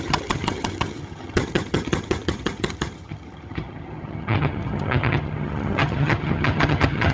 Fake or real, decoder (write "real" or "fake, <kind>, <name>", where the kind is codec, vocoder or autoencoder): fake, vocoder, HiFi-GAN